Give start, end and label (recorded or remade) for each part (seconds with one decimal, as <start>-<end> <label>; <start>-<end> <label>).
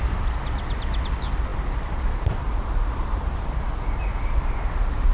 0.0-1.5 recorded; 1.5-3.5 remade; 3.5-5.1 recorded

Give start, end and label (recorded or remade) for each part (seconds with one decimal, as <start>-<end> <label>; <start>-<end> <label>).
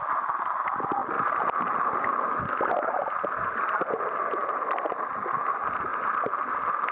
0.0-1.0 recorded; 1.0-2.5 remade; 2.5-4.4 recorded; 4.4-5.1 remade; 5.1-5.9 recorded; 5.9-6.4 remade; 6.4-6.9 recorded